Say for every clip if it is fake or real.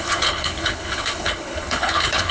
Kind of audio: fake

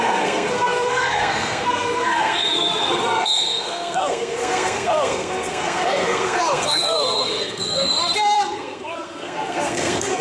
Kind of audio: fake